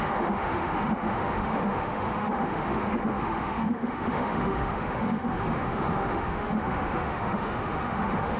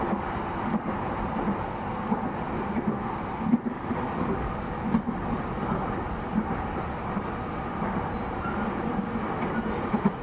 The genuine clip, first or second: second